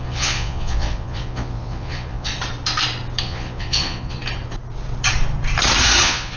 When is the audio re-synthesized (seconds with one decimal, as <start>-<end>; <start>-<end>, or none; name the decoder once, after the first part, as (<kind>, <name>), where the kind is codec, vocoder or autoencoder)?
0.0-2.3 (vocoder, Vocos); 3.2-4.2; 6.0-6.4